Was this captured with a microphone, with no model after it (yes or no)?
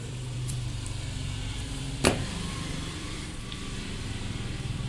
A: no